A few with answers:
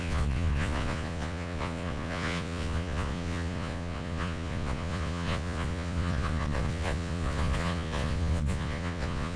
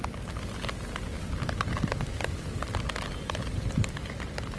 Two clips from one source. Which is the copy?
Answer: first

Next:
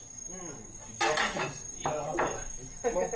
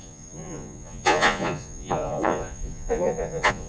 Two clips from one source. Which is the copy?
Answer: second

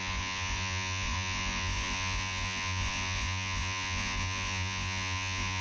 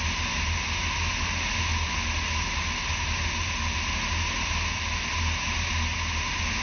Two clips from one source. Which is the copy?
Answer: first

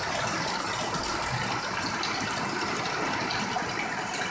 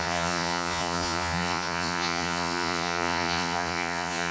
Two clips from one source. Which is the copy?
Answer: second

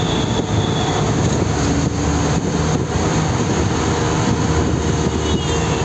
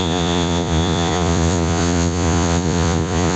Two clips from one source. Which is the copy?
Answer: second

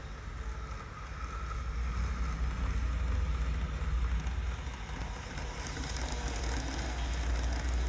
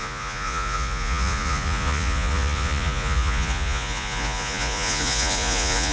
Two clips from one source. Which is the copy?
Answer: second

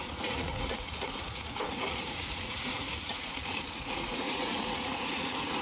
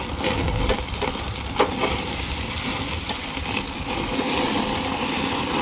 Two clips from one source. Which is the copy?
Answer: first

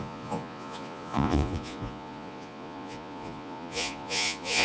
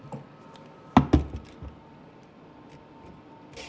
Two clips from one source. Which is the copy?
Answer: first